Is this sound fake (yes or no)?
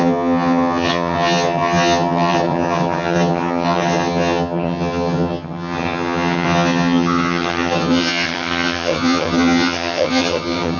yes